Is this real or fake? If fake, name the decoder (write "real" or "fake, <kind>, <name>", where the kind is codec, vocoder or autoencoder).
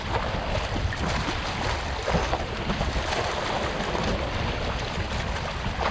real